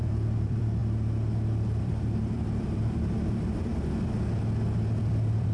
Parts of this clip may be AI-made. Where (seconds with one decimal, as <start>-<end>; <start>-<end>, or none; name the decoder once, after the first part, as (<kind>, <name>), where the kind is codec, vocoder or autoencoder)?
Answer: 0.0-0.8 (vocoder, BigVGAN v2); 1.8-3.7; 5.0-5.5

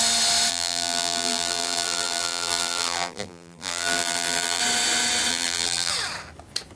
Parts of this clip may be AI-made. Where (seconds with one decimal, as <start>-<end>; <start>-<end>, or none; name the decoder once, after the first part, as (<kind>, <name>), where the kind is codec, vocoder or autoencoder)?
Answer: 0.5-4.6 (vocoder, BigVGAN v2); 5.3-5.9

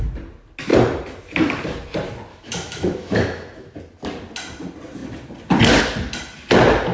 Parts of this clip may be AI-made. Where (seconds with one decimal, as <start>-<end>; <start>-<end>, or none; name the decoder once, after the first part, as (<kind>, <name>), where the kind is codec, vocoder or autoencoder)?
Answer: 2.3-3.8 (autoencoder, DAC-VAE)

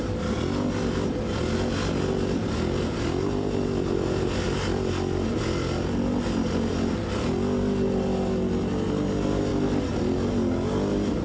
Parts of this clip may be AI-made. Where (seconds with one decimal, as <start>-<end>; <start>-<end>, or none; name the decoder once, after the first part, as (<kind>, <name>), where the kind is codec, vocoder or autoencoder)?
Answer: none